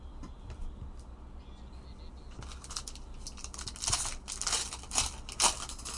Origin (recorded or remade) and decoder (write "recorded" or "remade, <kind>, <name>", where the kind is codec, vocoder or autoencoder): recorded